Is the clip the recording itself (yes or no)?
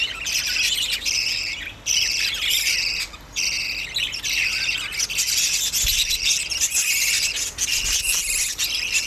yes